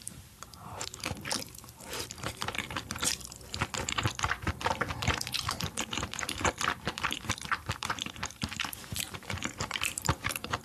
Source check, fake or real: fake